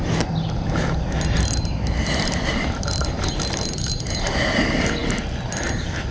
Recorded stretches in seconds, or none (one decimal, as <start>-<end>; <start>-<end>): 0.0-6.1